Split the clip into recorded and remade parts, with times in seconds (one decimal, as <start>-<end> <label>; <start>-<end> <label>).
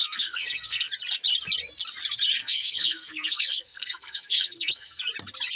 0.0-0.9 remade; 0.9-2.4 recorded; 2.4-5.0 remade; 5.0-5.6 recorded